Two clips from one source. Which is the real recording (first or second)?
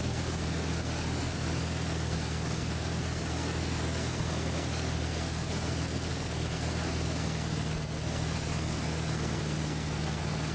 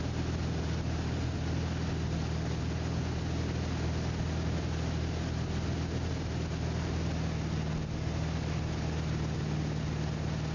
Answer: second